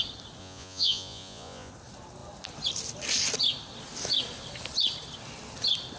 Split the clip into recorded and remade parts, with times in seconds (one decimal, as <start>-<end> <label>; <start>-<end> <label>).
0.0-0.4 recorded; 0.4-1.7 remade; 1.7-6.0 recorded